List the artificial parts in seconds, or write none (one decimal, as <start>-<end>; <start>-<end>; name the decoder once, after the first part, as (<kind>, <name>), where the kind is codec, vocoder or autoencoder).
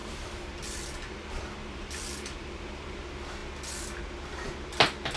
0.0-3.0 (vocoder, BigVGAN v2)